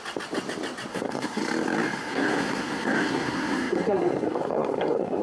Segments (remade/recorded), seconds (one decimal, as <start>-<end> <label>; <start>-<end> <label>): 0.0-0.9 recorded; 0.9-1.4 remade; 1.4-2.0 recorded; 2.0-5.2 remade